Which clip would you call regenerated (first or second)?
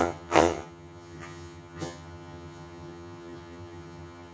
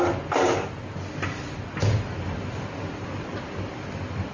first